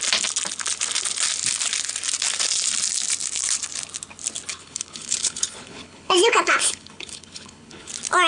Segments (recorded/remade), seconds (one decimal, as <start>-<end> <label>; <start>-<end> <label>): 0.0-4.5 recorded; 4.5-7.9 remade; 7.9-8.3 recorded